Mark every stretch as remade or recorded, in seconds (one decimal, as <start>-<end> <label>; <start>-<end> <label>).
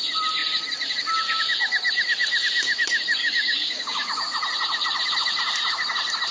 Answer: 0.0-3.2 recorded; 3.2-4.1 remade; 4.1-6.3 recorded